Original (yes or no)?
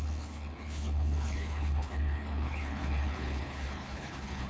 no